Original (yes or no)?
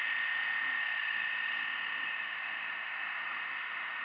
no